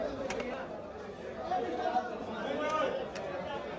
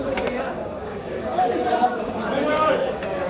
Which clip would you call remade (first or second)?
second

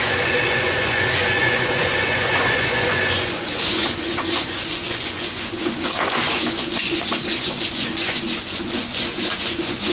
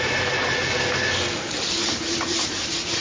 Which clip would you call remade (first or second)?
first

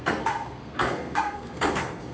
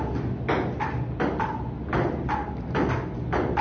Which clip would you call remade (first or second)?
first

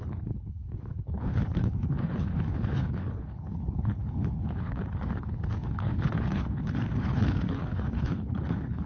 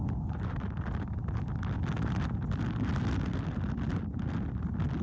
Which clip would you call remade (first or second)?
first